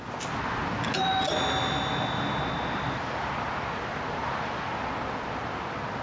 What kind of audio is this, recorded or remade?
recorded